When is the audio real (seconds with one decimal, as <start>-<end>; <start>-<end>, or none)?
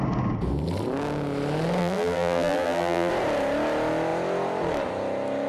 0.0-1.8; 3.1-5.5